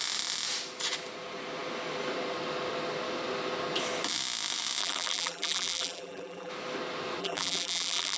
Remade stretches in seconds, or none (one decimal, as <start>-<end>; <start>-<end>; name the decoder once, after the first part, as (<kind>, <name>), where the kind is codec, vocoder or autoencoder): 4.8-6.5 (vocoder, BigVGAN v2); 7.2-8.2